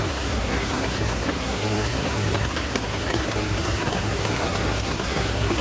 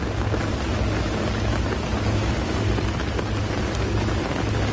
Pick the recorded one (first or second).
second